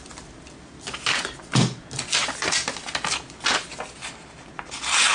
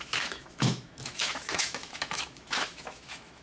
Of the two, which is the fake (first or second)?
second